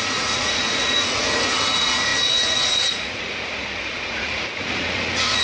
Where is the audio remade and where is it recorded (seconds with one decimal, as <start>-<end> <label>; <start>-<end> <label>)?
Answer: 0.0-5.4 remade